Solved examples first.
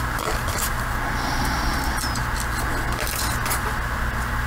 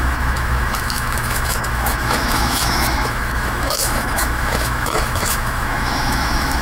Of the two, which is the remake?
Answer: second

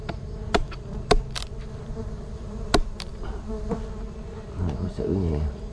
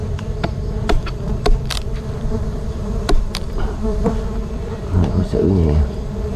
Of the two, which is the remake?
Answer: second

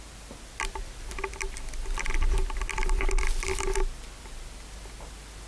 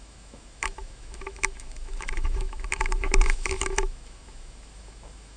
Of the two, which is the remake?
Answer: second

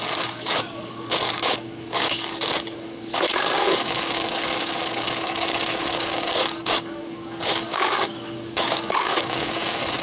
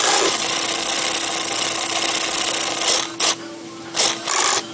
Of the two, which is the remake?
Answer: first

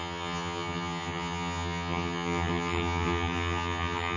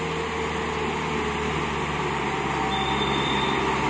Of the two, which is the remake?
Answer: first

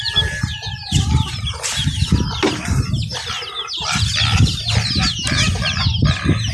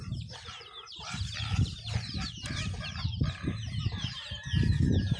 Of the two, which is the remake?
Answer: second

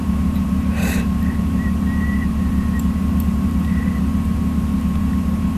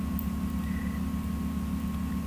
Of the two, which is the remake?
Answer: first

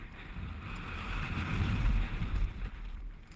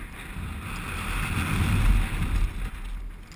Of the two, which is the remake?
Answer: first